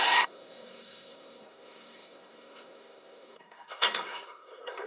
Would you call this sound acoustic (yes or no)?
no